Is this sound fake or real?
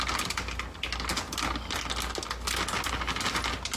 real